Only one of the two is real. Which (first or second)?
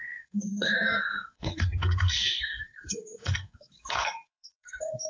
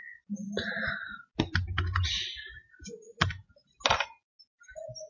second